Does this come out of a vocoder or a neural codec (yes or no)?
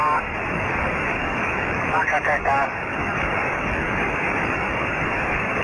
yes